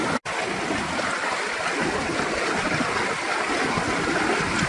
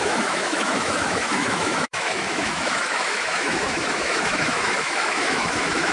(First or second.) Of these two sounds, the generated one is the second